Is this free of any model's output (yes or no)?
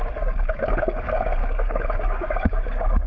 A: no